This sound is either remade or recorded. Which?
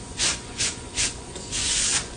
remade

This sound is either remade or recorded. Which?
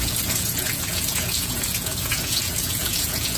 remade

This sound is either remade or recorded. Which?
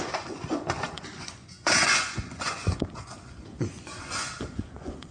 remade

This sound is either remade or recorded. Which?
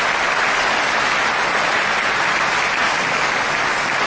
recorded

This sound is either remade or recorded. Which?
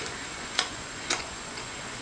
remade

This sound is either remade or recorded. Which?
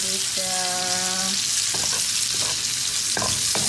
recorded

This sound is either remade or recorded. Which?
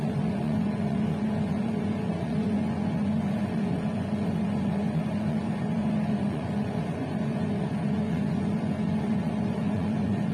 remade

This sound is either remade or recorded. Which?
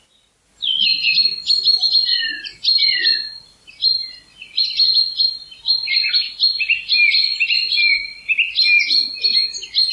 recorded